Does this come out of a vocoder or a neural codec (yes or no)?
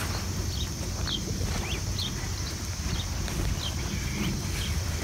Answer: no